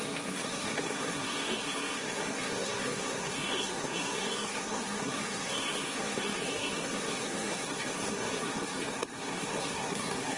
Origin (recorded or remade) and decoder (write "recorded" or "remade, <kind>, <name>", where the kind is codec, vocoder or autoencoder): remade, codec, SNAC